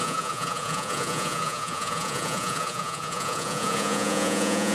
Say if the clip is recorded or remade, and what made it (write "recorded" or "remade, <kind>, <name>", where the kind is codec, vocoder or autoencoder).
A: remade, vocoder, Vocos